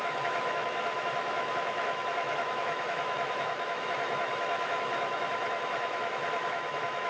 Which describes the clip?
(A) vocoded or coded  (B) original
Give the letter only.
A